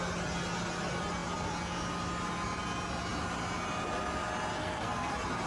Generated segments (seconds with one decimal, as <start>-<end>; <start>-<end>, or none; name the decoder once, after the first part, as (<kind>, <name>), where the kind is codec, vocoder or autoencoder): 4.6-5.1 (codec, SNAC)